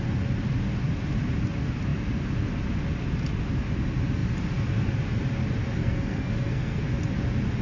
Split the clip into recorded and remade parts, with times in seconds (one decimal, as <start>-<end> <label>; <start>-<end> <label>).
0.0-5.8 recorded; 5.8-6.8 remade; 6.8-7.6 recorded